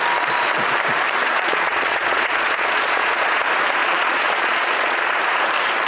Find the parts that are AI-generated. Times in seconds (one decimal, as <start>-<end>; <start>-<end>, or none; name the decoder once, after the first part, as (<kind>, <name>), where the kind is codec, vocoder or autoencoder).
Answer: 1.3-3.4 (vocoder, Vocos); 3.8-5.2